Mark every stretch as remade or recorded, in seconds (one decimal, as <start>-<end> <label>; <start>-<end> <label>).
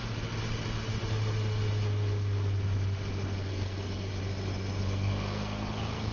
0.0-3.4 recorded; 3.4-4.1 remade; 4.1-4.8 recorded; 4.8-6.1 remade